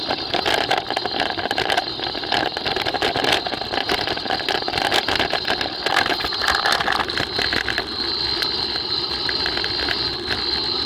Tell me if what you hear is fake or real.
real